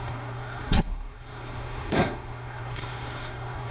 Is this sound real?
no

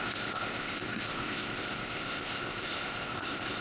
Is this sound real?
no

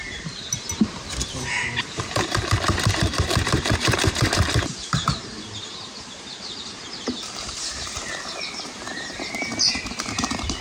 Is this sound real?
no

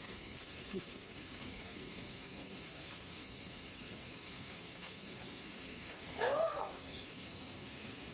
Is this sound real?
no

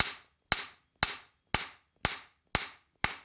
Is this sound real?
yes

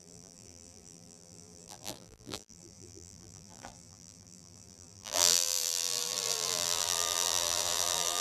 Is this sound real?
no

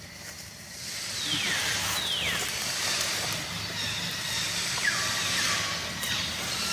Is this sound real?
yes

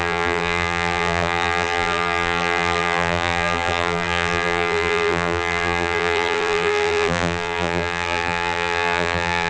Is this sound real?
no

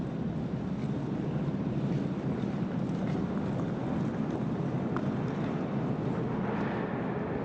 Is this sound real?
yes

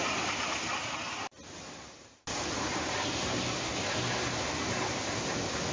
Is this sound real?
yes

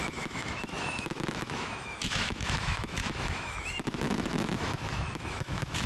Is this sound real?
no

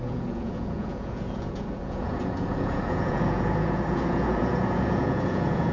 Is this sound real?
no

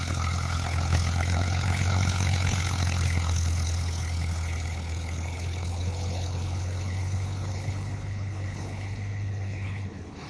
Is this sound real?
no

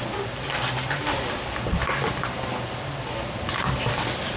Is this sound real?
yes